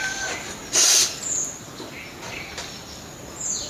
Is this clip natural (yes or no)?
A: yes